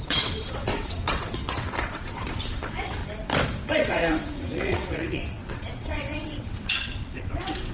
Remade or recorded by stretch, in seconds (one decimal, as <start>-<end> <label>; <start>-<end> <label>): 0.0-3.0 remade; 3.0-3.7 recorded; 3.7-7.7 remade